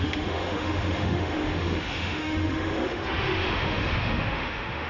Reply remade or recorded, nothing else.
remade